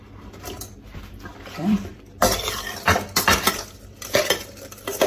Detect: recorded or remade remade